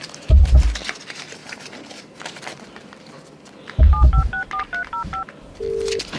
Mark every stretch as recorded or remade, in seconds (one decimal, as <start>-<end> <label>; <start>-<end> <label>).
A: 0.0-1.4 recorded; 1.4-2.4 remade; 2.4-6.2 recorded